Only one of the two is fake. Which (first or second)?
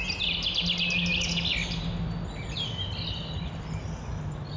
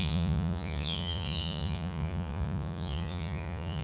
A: second